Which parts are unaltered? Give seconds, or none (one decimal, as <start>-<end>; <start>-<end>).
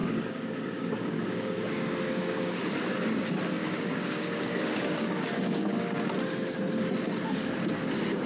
2.5-3.6; 6.0-8.3